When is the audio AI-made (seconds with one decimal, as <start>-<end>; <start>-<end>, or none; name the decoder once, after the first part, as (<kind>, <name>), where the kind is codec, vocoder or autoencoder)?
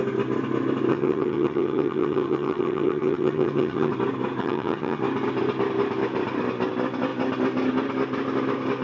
0.9-3.9 (vocoder, HiFi-GAN); 4.4-5.0